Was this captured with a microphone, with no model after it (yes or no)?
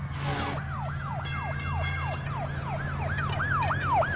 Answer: yes